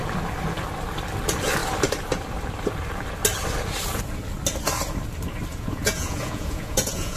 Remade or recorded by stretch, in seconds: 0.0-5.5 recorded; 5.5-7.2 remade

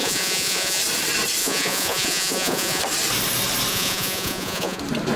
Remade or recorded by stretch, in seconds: 0.0-0.8 remade; 0.8-1.4 recorded; 1.4-2.8 remade; 2.8-3.7 recorded; 3.7-4.8 remade; 4.8-5.2 recorded